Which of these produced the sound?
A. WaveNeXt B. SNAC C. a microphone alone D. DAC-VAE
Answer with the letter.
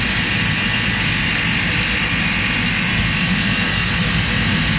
C